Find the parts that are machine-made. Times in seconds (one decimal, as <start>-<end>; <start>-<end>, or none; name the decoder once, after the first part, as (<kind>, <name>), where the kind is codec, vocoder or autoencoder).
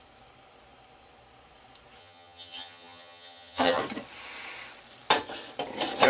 2.0-3.8 (vocoder, HiFi-GAN)